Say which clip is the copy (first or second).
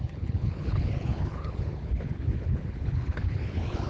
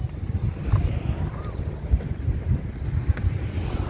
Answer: first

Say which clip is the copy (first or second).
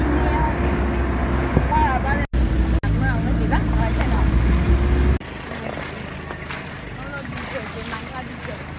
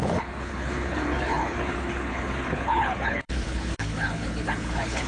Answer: second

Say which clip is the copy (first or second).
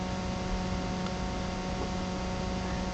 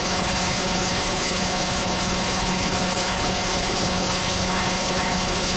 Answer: second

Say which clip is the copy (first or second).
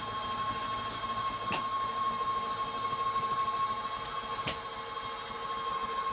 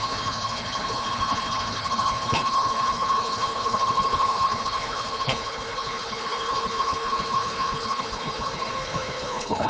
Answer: second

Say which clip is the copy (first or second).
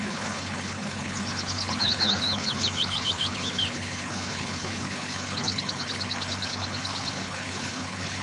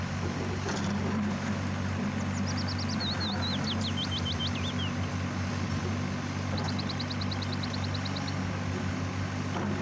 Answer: first